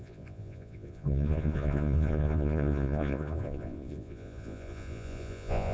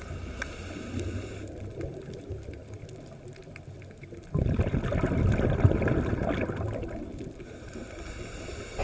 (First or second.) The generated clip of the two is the first